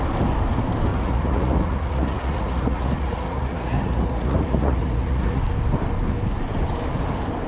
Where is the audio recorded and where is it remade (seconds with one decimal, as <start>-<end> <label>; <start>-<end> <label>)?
0.0-0.9 recorded; 0.9-5.4 remade; 5.4-7.5 recorded

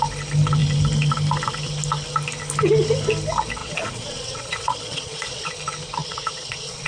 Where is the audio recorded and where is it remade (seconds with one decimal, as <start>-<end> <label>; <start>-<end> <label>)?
0.0-3.6 recorded; 3.6-5.5 remade; 5.5-6.0 recorded; 6.0-6.9 remade

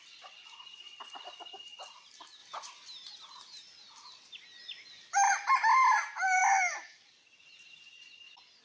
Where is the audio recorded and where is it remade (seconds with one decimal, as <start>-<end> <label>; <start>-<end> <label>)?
0.0-8.6 recorded

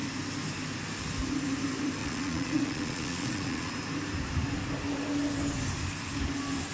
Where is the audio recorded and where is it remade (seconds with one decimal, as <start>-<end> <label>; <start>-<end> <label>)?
0.0-2.0 recorded; 2.0-3.7 remade; 3.7-6.7 recorded

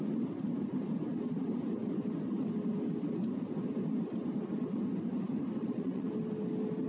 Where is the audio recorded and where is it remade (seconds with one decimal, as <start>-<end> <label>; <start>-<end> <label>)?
0.0-5.6 recorded; 5.6-6.1 remade; 6.1-6.9 recorded

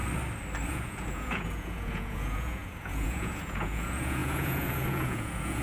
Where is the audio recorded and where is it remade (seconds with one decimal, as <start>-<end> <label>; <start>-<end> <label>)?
0.0-0.7 recorded; 0.7-5.6 remade